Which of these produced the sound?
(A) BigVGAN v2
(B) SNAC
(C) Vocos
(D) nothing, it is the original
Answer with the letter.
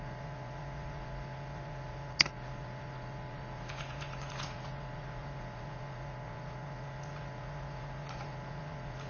C